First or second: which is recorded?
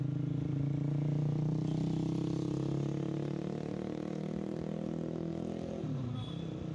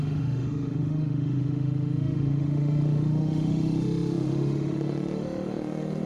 first